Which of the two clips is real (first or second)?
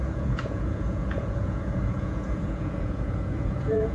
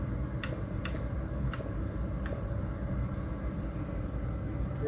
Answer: second